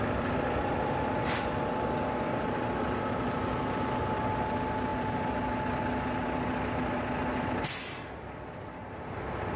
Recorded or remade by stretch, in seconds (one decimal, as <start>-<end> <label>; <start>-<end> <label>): 0.0-9.6 recorded